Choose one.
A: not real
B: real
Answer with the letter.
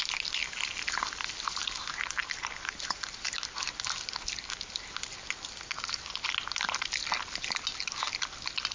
B